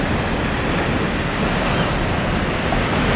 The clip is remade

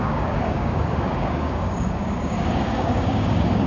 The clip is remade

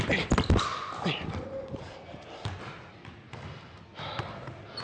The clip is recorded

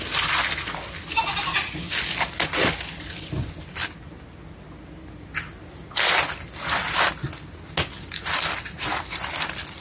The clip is recorded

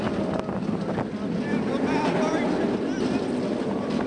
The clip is recorded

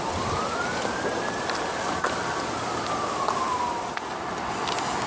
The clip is recorded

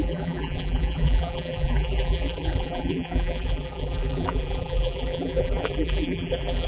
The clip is remade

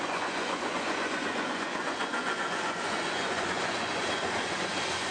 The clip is remade